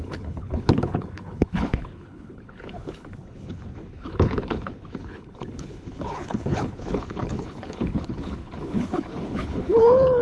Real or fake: fake